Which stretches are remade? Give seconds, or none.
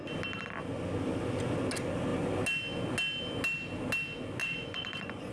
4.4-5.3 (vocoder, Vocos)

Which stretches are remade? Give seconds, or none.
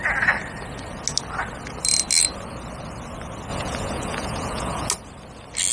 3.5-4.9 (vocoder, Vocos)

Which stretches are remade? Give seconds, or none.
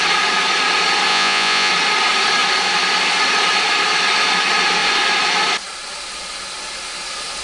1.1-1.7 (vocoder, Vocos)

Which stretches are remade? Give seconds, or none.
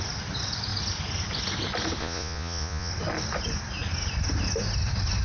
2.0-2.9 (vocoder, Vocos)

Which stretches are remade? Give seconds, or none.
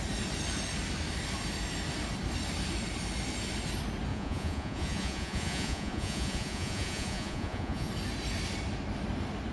4.1-7.9 (vocoder, Vocos)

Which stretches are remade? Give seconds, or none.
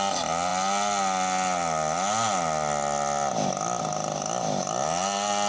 none